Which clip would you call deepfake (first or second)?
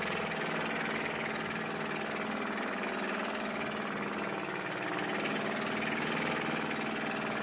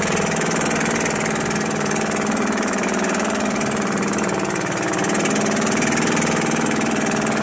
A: second